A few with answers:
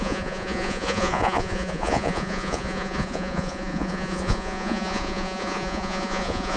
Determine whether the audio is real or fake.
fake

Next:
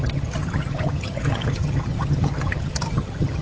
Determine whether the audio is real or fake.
fake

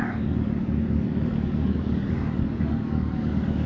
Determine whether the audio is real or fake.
fake